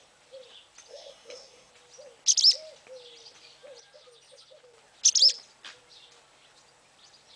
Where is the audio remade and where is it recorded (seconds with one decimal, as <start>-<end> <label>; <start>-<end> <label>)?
0.0-0.9 recorded; 0.9-1.7 remade; 1.7-7.4 recorded